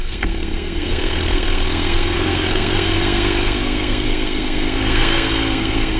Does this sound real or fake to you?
fake